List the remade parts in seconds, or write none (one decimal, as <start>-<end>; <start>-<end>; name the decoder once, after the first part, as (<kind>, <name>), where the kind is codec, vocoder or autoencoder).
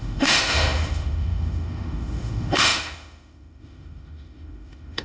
0.0-5.0 (autoencoder, DAC-VAE)